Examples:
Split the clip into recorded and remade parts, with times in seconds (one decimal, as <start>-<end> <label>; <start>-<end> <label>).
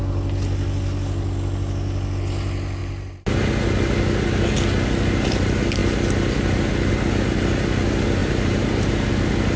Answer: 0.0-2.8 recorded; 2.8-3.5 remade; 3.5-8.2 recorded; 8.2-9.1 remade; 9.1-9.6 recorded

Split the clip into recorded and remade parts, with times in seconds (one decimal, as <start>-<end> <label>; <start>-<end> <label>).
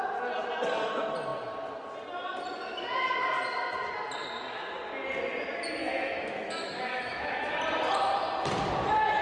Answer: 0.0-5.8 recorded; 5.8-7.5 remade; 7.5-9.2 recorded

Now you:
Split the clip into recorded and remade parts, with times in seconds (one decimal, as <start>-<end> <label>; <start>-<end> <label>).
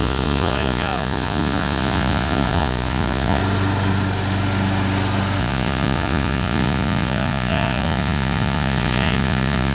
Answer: 0.0-3.4 remade; 3.4-5.4 recorded; 5.4-9.7 remade